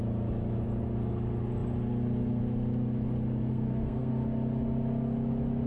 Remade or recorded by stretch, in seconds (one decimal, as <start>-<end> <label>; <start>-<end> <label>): 0.0-3.5 recorded; 3.5-4.1 remade; 4.1-5.7 recorded